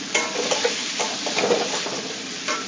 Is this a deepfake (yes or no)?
no